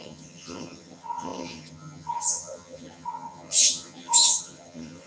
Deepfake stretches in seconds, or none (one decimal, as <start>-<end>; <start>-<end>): 0.0-5.1